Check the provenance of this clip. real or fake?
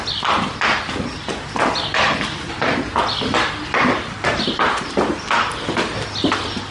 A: real